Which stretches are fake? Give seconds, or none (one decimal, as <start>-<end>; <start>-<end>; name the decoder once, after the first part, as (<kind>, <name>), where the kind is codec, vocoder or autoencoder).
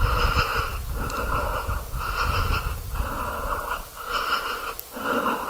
0.0-0.5 (vocoder, BigVGAN v2); 3.8-5.5